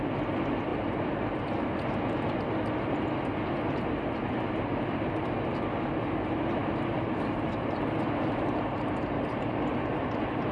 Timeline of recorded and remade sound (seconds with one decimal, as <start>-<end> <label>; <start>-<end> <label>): 0.0-10.5 recorded